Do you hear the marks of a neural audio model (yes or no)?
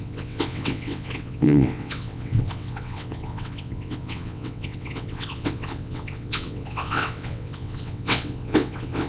yes